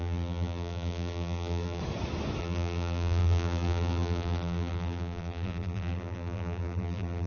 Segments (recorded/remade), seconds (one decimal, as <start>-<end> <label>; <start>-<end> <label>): 0.0-1.8 remade; 1.8-2.4 recorded; 2.4-7.3 remade